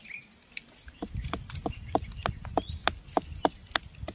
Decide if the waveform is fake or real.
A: real